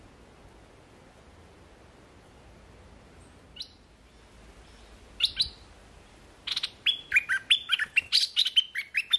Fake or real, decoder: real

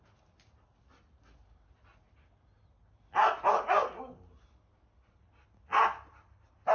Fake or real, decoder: real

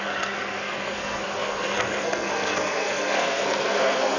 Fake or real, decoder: fake, codec, SNAC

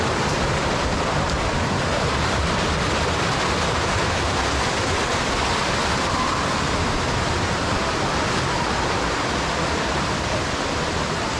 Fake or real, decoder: real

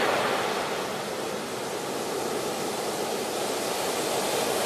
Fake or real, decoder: real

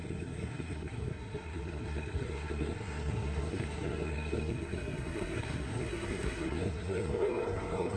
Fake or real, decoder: fake, codec, SNAC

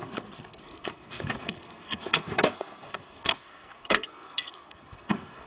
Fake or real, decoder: fake, codec, SNAC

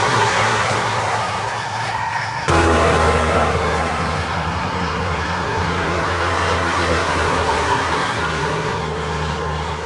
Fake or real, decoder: fake, codec, SNAC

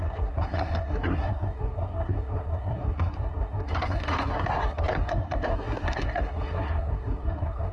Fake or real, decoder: fake, codec, SNAC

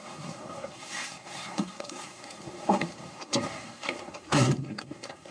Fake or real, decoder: fake, codec, SNAC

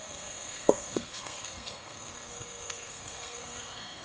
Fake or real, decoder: fake, codec, SNAC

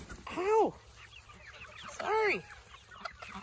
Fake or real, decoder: real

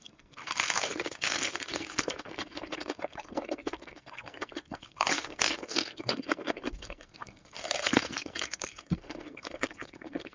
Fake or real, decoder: fake, codec, SNAC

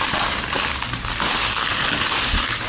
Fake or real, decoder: real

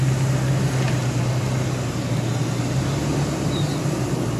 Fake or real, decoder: real